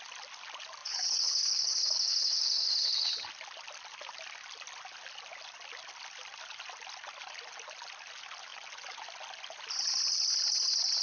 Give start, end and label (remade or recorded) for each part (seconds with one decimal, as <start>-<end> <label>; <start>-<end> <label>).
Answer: 0.0-0.8 recorded; 0.8-3.1 remade; 3.1-11.0 recorded